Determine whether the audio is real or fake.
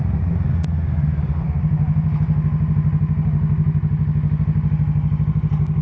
real